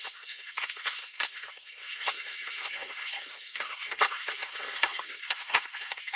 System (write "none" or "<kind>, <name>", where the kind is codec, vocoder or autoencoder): codec, SNAC